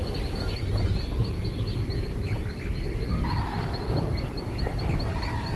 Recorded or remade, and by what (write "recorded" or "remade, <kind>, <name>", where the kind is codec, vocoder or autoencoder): recorded